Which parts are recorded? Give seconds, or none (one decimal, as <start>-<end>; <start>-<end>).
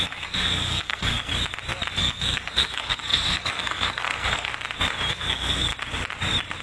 1.3-2.0; 4.5-5.1; 5.7-6.6